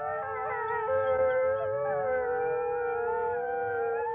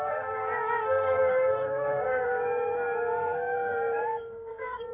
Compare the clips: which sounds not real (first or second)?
second